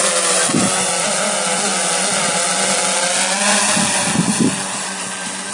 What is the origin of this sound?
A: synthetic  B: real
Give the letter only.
B